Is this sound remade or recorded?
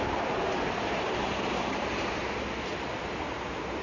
remade